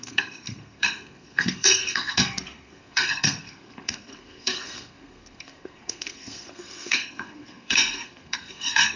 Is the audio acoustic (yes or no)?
no